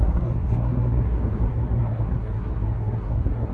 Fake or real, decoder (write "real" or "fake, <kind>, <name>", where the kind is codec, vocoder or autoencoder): fake, codec, SNAC